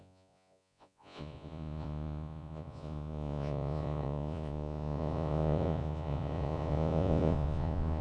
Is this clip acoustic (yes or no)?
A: no